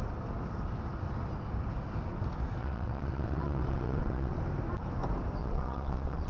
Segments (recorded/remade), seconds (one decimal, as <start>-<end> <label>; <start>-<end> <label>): 0.0-2.6 recorded; 2.6-4.4 remade; 4.4-5.4 recorded; 5.4-6.3 remade